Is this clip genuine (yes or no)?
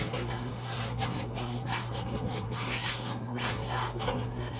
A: no